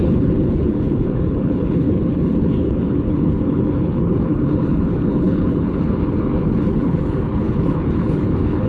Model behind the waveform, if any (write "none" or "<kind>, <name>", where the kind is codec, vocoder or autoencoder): codec, HILCodec